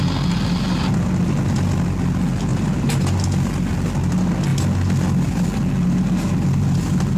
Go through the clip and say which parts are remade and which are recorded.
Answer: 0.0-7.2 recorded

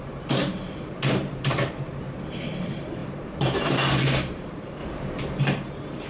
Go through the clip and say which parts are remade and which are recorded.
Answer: 0.0-1.9 remade; 1.9-2.6 recorded; 2.6-4.8 remade; 4.8-5.4 recorded; 5.4-6.1 remade

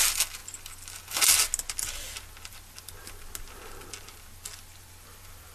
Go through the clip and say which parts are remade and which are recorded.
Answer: 0.0-5.5 recorded